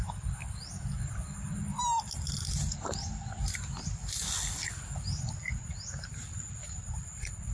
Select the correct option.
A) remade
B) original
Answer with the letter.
B